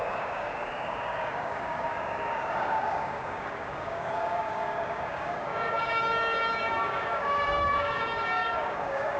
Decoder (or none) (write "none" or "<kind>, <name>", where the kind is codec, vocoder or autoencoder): codec, DAC